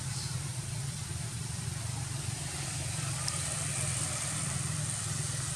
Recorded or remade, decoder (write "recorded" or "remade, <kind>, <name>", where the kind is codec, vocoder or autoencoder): recorded